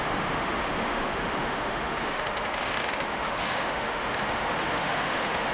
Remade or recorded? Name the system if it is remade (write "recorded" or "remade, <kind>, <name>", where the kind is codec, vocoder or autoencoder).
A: remade, autoencoder, DAC-VAE